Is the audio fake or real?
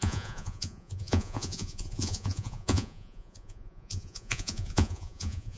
fake